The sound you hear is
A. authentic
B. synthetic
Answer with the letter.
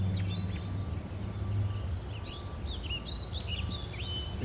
A